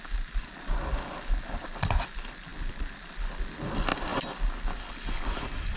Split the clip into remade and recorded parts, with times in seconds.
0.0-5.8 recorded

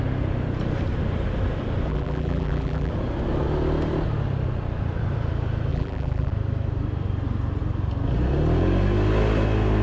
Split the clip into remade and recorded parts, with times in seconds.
0.0-1.9 recorded; 1.9-2.9 remade; 2.9-5.7 recorded; 5.7-6.3 remade; 6.3-9.8 recorded

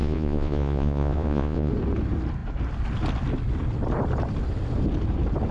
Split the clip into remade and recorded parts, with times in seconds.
0.0-1.7 remade; 1.7-5.5 recorded

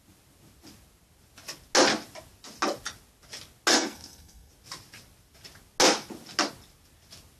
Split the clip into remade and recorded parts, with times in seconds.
0.0-3.7 recorded; 3.7-4.5 remade; 4.5-7.4 recorded

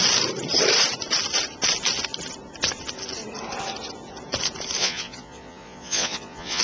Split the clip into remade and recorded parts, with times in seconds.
0.0-4.8 recorded; 4.8-6.6 remade

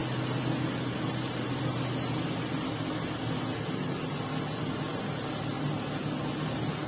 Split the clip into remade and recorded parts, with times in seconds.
0.0-6.9 recorded

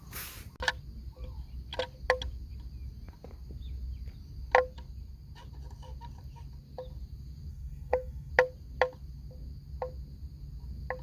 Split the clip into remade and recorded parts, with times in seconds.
0.0-7.5 recorded; 7.5-8.3 remade; 8.3-11.0 recorded